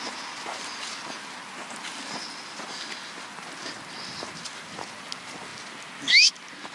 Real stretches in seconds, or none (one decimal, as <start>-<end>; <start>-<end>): 0.0-6.7